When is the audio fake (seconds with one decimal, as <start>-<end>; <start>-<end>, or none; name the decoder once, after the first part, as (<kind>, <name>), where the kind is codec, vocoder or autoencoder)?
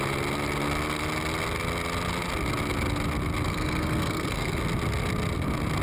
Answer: 3.5-4.6 (codec, SNAC)